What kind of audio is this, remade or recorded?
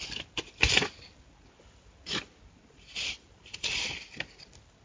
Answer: recorded